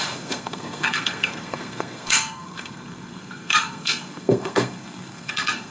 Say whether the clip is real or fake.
fake